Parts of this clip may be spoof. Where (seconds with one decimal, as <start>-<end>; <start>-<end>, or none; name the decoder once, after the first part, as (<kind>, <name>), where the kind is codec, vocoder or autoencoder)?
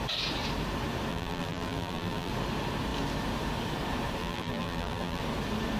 1.1-2.3 (vocoder, BigVGAN v2); 4.2-5.2